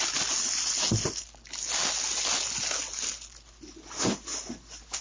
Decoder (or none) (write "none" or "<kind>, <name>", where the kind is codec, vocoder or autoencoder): none